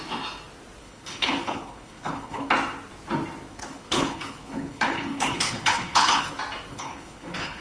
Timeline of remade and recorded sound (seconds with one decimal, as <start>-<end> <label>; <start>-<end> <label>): 0.0-0.8 recorded; 0.8-2.5 remade; 2.5-3.5 recorded; 3.5-6.3 remade; 6.3-6.7 recorded; 6.7-7.6 remade